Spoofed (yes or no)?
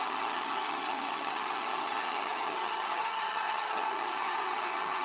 yes